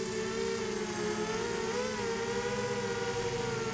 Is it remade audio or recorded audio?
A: recorded